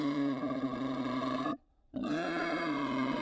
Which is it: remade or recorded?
remade